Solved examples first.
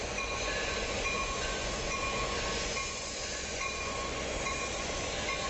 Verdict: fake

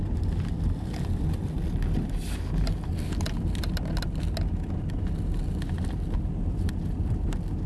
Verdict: real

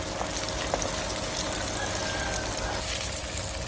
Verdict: real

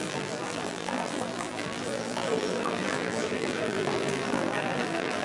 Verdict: fake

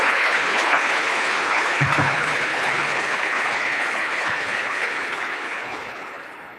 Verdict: fake